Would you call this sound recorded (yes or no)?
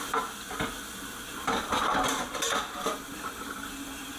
yes